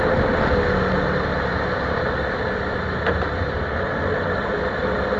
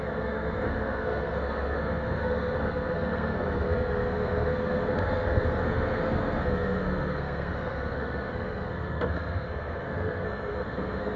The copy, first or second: second